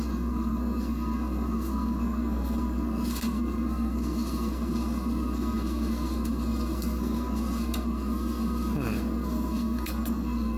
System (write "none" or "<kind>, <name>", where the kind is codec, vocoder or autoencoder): codec, SNAC